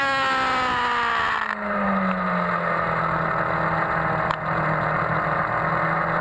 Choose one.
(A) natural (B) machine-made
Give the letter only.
A